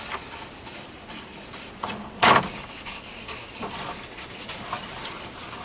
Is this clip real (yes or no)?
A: yes